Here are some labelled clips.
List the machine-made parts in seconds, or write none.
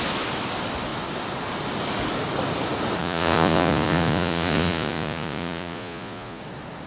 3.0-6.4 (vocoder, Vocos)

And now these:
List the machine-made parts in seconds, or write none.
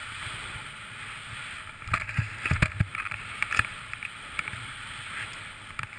2.9-4.0 (vocoder, BigVGAN v2)